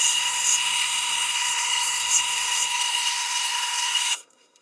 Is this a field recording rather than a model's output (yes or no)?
no